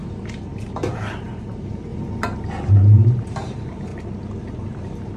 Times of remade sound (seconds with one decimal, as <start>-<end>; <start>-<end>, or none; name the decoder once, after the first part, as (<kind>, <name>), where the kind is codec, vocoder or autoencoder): 0.0-1.9 (vocoder, BigVGAN v2); 2.7-3.9; 4.6-5.2